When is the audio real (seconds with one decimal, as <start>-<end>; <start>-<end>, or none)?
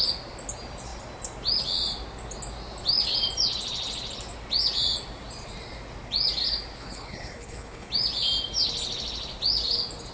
0.0-6.8; 7.9-10.1